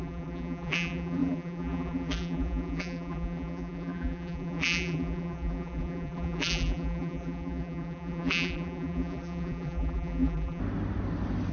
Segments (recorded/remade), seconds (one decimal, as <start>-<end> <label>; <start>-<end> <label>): 0.0-10.6 remade; 10.6-11.5 recorded